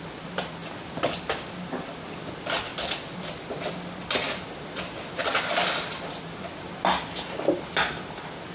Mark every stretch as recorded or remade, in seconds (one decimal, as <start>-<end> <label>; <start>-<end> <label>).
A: 0.0-0.6 recorded; 0.6-1.9 remade; 1.9-2.7 recorded; 2.7-3.7 remade; 3.7-5.2 recorded; 5.2-6.4 remade; 6.4-8.5 recorded